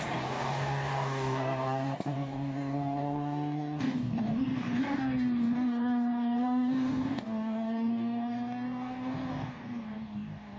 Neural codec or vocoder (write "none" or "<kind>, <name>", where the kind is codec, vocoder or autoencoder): codec, DAC